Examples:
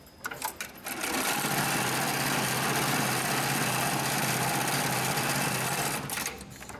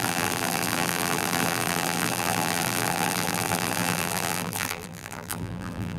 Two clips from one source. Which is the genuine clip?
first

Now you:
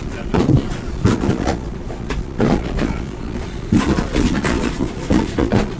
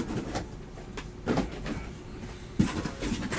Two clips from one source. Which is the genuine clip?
second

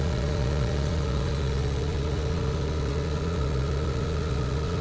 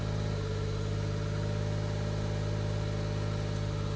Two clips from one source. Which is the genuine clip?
second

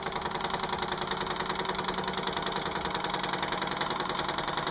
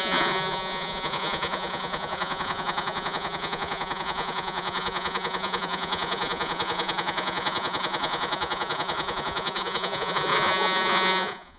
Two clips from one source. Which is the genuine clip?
first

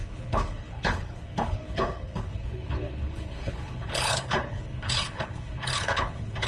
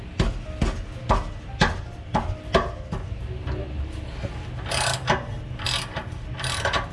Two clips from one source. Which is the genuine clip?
second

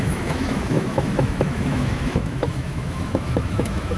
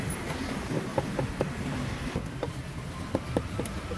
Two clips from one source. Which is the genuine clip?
second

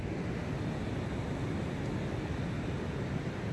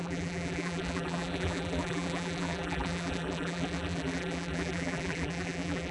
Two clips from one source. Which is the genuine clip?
first